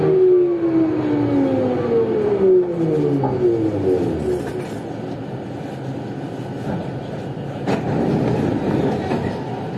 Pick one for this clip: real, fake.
real